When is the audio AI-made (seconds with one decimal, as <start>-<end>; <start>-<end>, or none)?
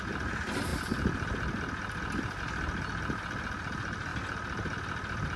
none